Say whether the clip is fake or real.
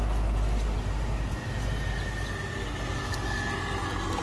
real